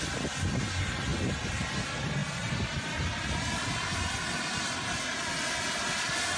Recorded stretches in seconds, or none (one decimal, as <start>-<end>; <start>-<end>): 0.0-6.4